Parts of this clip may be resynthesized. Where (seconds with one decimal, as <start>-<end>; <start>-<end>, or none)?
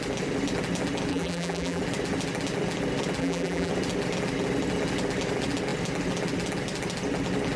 1.1-1.8; 3.2-3.7